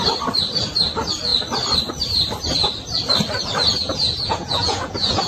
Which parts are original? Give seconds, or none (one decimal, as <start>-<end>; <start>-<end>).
0.0-3.8